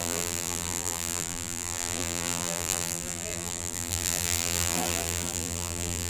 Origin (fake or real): fake